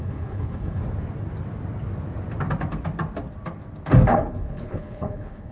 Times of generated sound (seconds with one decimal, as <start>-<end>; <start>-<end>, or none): 0.0-0.8; 4.1-5.5